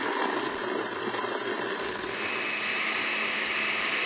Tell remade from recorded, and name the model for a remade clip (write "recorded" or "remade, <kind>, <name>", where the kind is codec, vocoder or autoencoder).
recorded